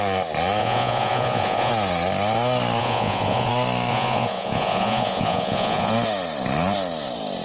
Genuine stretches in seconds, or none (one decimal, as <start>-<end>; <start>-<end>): 0.0-0.6; 1.7-2.8; 3.5-3.9; 5.9-7.4